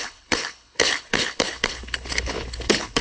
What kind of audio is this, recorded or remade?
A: remade